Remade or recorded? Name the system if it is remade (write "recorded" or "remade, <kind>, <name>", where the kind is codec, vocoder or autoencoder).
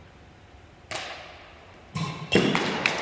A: recorded